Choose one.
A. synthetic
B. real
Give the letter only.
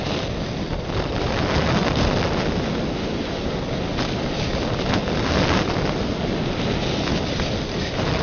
B